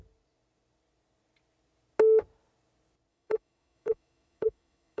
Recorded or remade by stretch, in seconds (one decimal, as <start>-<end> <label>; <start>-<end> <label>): 0.0-3.1 recorded; 3.1-5.0 remade